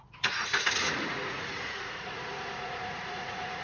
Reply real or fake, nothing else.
fake